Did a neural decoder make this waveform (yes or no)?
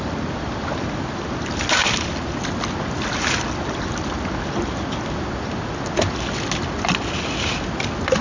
no